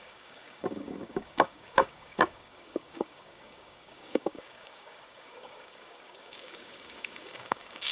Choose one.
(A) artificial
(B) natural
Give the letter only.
A